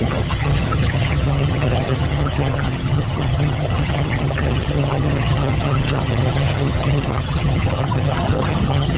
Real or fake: fake